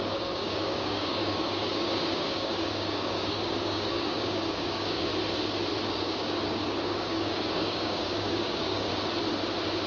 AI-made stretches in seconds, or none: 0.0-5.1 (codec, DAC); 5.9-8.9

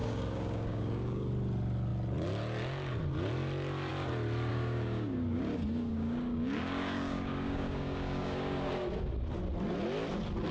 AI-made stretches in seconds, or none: 0.0-1.3 (codec, DAC); 4.5-8.7

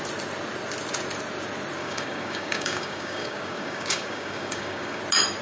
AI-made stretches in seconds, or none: 1.8-5.0 (codec, DAC)